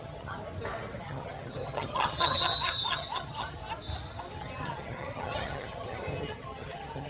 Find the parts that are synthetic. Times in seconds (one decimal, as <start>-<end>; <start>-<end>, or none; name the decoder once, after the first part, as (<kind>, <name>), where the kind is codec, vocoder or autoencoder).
0.0-0.4 (vocoder, HiFi-GAN); 1.0-3.6; 4.3-7.1

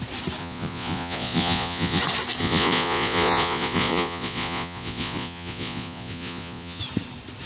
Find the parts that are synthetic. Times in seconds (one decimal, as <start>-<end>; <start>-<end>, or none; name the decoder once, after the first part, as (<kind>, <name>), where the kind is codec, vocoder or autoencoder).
0.4-2.0 (vocoder, Vocos); 2.4-6.8

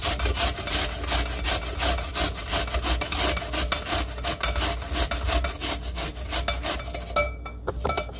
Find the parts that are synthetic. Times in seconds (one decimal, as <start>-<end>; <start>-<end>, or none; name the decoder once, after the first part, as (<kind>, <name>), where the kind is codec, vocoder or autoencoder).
none